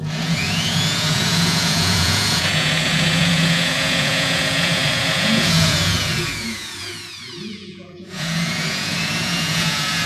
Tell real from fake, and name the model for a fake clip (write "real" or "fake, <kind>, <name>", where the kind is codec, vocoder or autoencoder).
fake, vocoder, Vocos